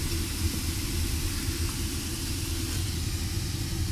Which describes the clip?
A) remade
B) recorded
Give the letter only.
B